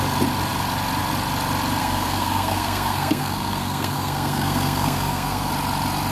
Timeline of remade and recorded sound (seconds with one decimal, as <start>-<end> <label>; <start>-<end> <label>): 0.0-1.8 recorded; 1.8-5.5 remade; 5.5-6.1 recorded